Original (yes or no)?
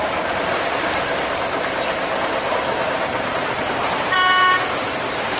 no